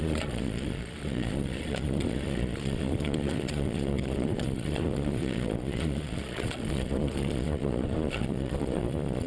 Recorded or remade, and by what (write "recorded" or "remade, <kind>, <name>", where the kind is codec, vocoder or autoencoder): remade, vocoder, Vocos